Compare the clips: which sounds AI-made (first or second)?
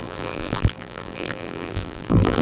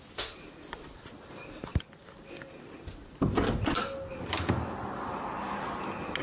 first